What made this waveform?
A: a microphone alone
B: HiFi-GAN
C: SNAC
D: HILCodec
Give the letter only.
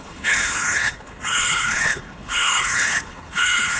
D